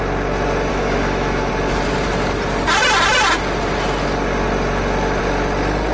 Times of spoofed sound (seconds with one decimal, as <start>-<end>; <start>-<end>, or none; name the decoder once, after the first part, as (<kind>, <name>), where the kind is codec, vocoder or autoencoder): 0.7-1.5 (autoencoder, DAC-VAE)